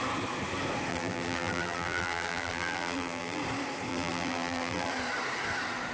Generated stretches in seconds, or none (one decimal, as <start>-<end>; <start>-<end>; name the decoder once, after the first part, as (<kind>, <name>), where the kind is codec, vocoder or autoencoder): 0.9-3.4 (vocoder, BigVGAN v2); 3.9-4.9